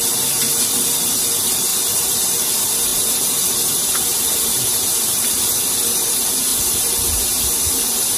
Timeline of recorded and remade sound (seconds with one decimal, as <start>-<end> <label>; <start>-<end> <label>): 0.0-1.7 recorded; 1.7-2.5 remade; 2.5-2.9 recorded; 2.9-5.3 remade; 5.3-6.5 recorded; 6.5-7.4 remade; 7.4-8.2 recorded